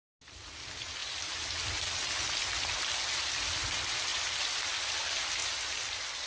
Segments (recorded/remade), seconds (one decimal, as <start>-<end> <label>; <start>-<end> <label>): 0.0-6.3 recorded